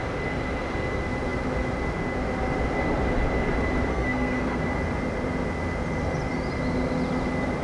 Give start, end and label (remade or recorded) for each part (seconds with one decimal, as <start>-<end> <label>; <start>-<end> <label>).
0.0-3.9 recorded; 3.9-4.6 remade; 4.6-7.6 recorded